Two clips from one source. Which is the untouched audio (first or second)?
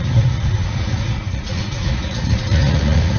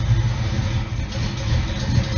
second